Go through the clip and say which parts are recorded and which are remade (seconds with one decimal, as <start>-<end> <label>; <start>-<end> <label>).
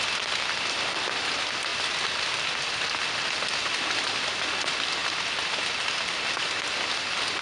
0.0-7.4 recorded